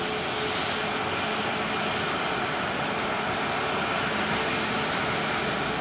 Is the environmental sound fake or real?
real